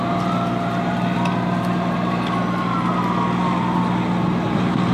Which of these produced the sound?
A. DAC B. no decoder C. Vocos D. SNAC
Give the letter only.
B